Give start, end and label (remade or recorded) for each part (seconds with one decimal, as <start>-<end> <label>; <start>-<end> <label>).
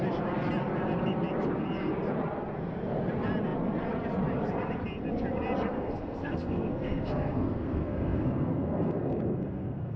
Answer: 0.0-5.7 recorded; 5.7-10.0 remade